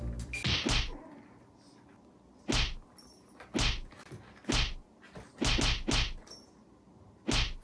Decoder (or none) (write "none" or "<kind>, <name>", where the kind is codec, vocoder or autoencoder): none